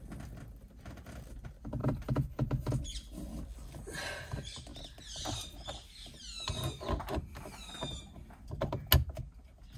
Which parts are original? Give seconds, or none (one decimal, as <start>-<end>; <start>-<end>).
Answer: 0.0-1.8; 2.7-9.8

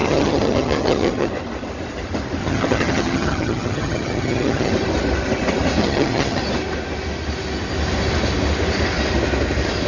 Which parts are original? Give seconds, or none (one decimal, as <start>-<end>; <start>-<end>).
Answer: 1.3-2.4; 4.7-5.8; 6.4-9.9

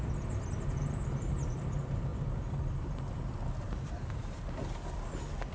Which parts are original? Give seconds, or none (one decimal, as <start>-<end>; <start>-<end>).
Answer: 0.0-5.5

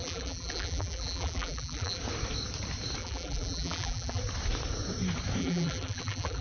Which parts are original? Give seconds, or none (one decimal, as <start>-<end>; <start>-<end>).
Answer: 2.0-3.0; 4.2-5.4

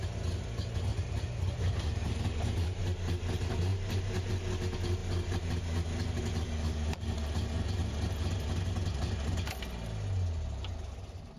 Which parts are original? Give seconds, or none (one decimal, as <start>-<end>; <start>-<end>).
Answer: 0.0-0.9; 2.8-3.7; 4.3-11.4

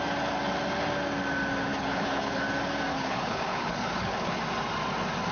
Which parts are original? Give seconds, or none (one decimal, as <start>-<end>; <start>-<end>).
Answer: 0.0-1.7; 2.4-2.9; 4.4-5.3

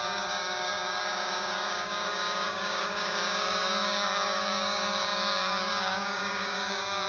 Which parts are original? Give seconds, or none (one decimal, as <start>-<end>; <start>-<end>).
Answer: none